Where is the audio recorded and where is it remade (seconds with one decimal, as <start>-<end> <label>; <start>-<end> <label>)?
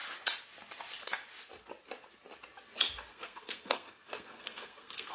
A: 0.0-3.1 recorded; 3.1-5.1 remade